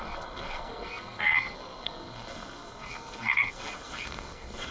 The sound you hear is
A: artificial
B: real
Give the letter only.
A